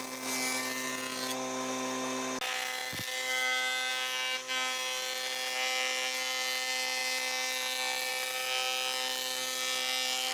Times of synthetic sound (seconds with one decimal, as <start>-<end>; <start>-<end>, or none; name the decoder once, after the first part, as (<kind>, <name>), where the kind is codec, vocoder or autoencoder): none